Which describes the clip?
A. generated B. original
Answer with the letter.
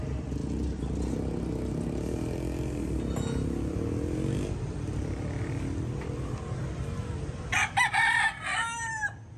B